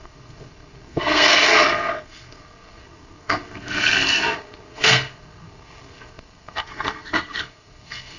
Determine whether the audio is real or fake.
fake